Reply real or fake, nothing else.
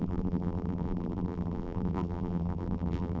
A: fake